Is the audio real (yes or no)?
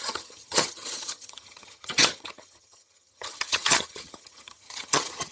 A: no